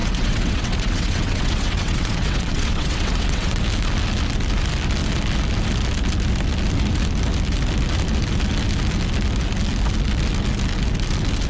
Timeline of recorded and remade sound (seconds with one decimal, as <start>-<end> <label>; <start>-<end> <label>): 0.0-3.6 remade; 3.6-11.5 recorded